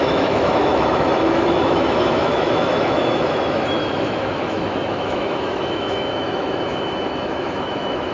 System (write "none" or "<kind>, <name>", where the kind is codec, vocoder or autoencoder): autoencoder, DAC-VAE